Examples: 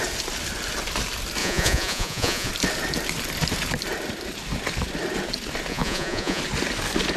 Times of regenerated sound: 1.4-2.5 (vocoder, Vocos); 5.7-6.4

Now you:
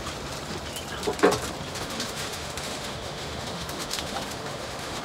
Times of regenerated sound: 1.7-5.0 (autoencoder, DAC-VAE)

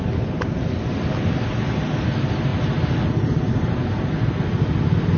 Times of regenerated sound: none

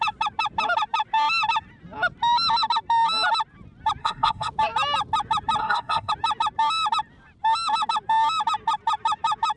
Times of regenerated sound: 4.0-4.5 (codec, SNAC); 5.6-6.1

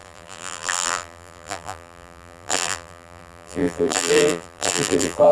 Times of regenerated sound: 0.0-5.3 (vocoder, BigVGAN v2)

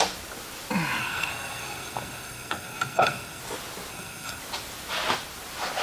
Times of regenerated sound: 1.0-3.4 (codec, SNAC); 3.9-4.4